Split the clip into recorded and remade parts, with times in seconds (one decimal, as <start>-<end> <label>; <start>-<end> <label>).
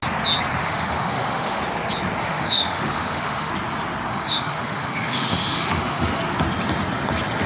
0.0-0.6 recorded; 0.6-1.6 remade; 1.6-2.2 recorded; 2.2-3.5 remade; 3.5-4.1 recorded; 4.1-6.2 remade; 6.2-7.5 recorded